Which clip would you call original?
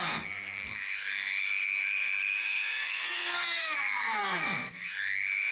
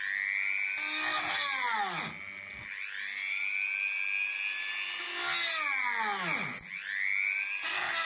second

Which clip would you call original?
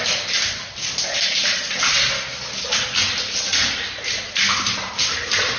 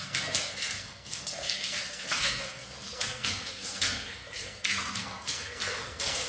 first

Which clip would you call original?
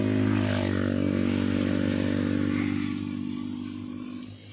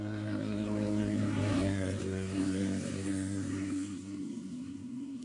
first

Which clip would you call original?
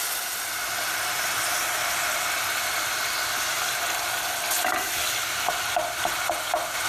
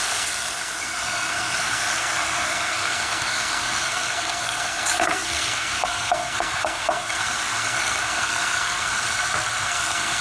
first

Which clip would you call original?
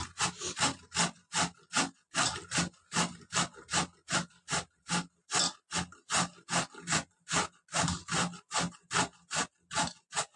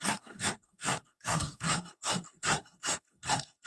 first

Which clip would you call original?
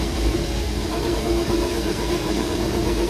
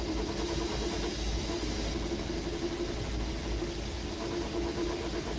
second